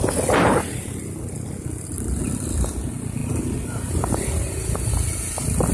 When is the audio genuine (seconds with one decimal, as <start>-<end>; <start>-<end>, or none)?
0.0-5.7

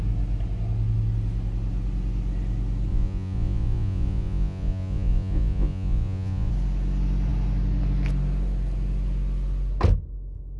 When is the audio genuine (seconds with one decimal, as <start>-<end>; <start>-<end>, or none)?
0.0-2.9; 6.5-10.6

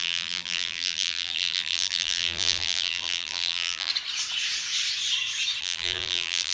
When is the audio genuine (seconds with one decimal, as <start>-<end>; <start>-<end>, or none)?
3.9-5.6

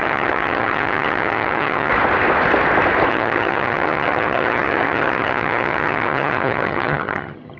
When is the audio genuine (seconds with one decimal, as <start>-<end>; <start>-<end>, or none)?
1.9-3.1

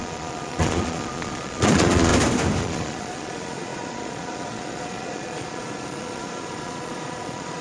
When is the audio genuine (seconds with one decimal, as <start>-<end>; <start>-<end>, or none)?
2.1-2.6

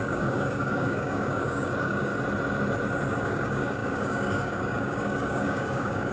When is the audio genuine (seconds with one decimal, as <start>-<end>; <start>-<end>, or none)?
2.1-3.2